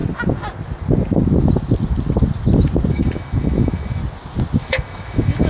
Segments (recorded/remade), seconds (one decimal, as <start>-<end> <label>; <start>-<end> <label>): 0.0-2.9 recorded; 2.9-4.0 remade; 4.0-4.6 recorded; 4.6-5.5 remade